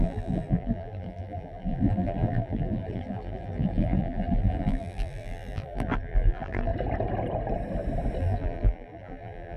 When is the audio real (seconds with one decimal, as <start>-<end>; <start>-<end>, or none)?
6.7-8.2

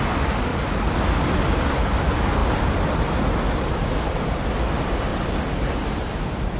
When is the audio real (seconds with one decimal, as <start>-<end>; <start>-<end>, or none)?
0.0-0.5; 1.2-5.1

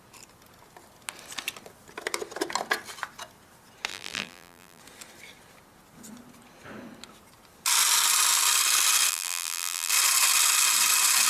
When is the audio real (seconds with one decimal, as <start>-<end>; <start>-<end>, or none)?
0.0-3.9; 4.8-9.1; 9.9-11.3

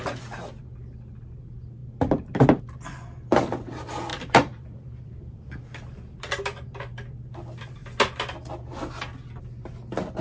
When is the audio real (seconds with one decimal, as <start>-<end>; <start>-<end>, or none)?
0.0-4.1; 5.4-10.2

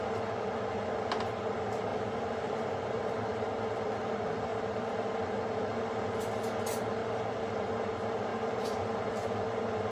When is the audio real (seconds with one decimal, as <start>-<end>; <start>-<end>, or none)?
0.0-1.9; 3.5-4.5; 5.1-8.3; 9.4-9.9

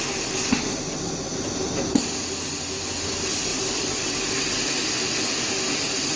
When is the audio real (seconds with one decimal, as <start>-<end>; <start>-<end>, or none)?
0.0-3.5; 4.1-6.2

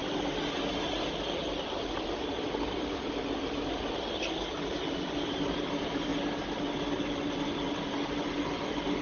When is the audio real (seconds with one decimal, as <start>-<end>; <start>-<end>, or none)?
0.0-3.9; 6.1-7.9

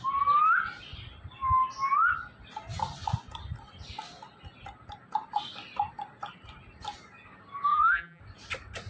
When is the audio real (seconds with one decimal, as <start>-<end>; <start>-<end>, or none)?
0.0-7.7; 8.2-8.9